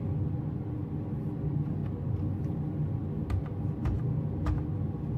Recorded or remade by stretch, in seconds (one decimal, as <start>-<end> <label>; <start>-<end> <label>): 0.0-3.0 remade; 3.0-4.7 recorded; 4.7-5.2 remade